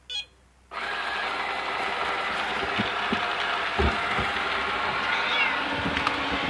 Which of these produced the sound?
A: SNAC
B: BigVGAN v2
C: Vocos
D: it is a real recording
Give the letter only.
D